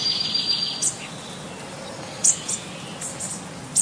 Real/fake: real